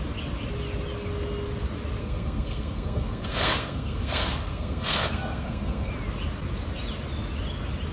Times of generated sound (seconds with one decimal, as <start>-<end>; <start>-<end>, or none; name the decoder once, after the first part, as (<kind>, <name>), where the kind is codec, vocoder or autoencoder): 2.0-5.9 (codec, SNAC)